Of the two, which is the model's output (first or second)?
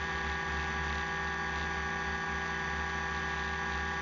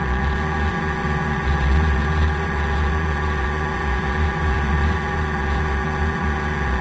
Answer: second